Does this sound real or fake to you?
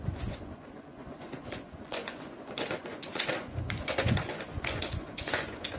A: fake